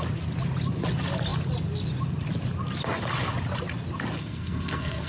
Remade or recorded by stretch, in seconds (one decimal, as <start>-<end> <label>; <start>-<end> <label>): 0.0-4.2 recorded; 4.2-5.1 remade